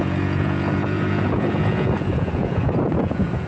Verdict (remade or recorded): remade